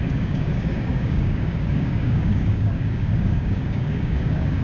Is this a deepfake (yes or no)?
yes